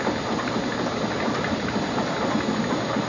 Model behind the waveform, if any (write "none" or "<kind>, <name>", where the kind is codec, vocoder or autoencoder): none